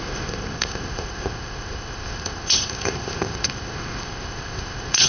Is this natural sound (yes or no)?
no